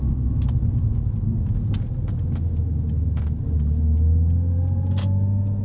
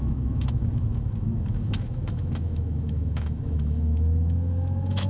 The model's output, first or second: second